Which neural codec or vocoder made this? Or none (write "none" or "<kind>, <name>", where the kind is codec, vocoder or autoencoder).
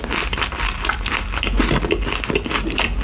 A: none